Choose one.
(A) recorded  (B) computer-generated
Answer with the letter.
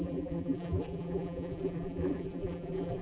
B